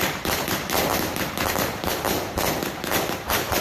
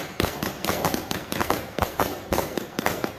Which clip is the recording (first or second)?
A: first